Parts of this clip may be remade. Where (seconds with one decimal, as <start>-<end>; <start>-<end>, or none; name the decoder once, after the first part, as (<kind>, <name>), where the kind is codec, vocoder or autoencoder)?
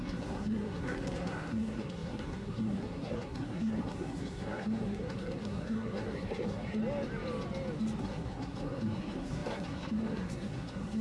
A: 0.0-6.8 (codec, SNAC); 8.0-11.0